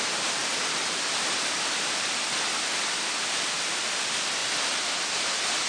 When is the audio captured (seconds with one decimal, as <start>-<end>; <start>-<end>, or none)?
0.0-0.4; 3.8-5.7